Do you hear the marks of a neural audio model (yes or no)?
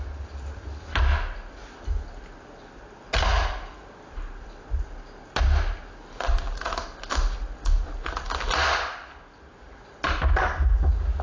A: no